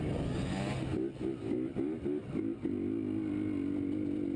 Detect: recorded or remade recorded